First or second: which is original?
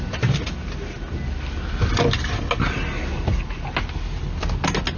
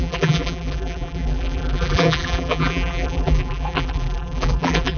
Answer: first